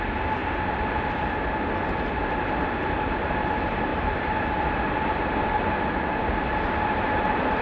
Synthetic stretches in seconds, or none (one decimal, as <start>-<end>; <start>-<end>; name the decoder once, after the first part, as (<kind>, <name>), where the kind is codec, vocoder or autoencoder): none